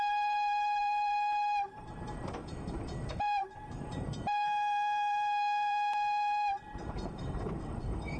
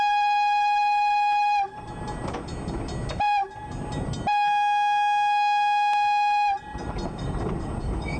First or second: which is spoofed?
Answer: first